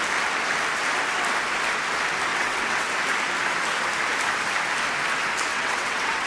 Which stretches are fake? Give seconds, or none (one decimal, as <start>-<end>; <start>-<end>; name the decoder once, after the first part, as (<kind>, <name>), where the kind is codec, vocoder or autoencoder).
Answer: 2.3-2.9 (vocoder, WaveNeXt); 5.5-6.3